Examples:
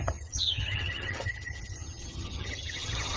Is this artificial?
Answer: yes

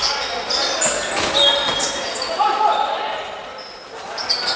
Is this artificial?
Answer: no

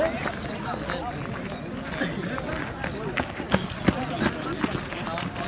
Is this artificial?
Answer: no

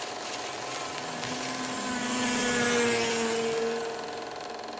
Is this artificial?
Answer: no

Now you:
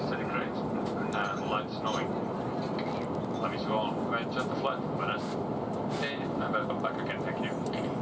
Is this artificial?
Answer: no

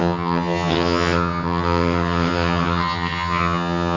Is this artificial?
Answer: yes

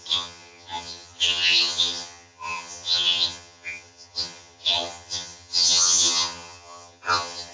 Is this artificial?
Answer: yes